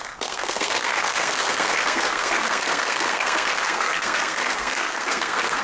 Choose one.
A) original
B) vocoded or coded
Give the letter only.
B